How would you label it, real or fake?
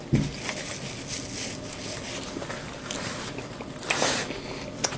real